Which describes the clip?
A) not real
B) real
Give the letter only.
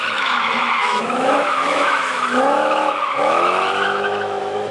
A